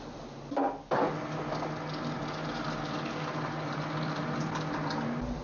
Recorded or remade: recorded